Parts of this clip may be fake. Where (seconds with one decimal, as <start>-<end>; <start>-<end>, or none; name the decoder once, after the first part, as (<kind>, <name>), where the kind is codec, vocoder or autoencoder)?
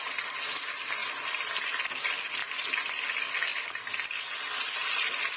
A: none